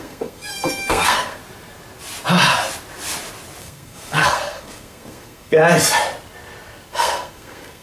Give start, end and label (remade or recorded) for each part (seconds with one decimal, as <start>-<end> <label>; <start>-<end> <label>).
0.0-1.4 remade; 1.4-3.6 recorded; 3.6-5.6 remade; 5.6-6.9 recorded; 6.9-7.8 remade